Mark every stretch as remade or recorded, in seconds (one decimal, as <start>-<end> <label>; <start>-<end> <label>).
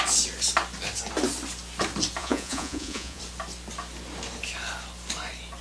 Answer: 0.0-2.2 recorded; 2.2-3.2 remade; 3.2-5.6 recorded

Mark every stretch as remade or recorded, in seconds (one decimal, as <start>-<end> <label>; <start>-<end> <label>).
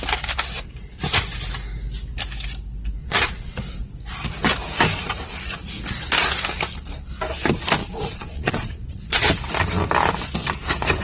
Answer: 0.0-3.0 recorded; 3.0-3.9 remade; 3.9-7.8 recorded; 7.8-9.3 remade; 9.3-11.0 recorded